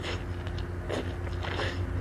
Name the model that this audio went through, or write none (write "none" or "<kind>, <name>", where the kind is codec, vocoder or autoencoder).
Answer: none